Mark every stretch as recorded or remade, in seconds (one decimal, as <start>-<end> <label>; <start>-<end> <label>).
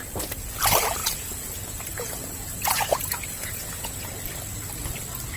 0.0-1.0 recorded; 1.0-4.1 remade; 4.1-5.4 recorded